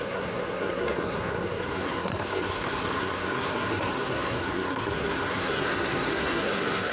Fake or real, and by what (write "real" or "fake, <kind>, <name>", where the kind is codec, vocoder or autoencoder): fake, codec, SNAC